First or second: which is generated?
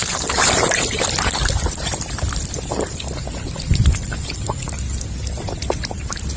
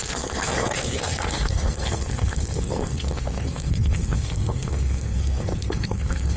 second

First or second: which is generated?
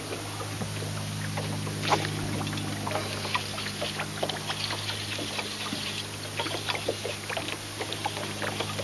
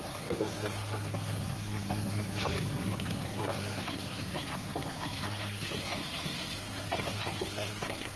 second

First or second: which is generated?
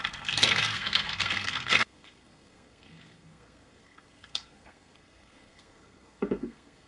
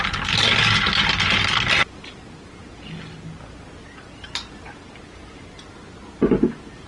first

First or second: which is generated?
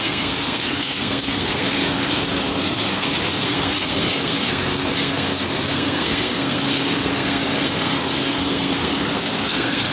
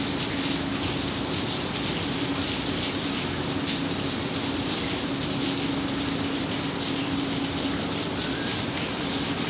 first